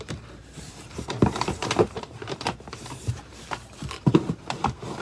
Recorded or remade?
remade